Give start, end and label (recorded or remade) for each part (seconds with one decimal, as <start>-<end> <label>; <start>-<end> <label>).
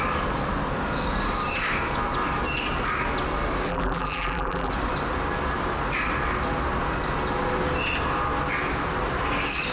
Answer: 0.0-3.7 recorded; 3.7-4.7 remade; 4.7-9.7 recorded